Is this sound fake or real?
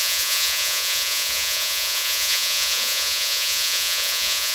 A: fake